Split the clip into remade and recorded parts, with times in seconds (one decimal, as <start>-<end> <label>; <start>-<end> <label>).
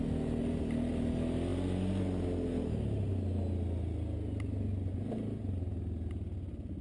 0.0-6.8 recorded